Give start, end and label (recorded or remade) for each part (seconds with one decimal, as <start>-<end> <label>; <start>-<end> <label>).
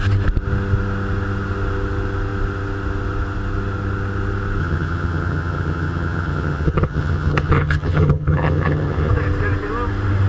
0.0-4.6 recorded; 4.6-9.1 remade; 9.1-10.3 recorded